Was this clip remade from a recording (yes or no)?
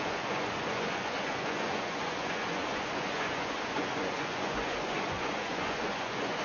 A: yes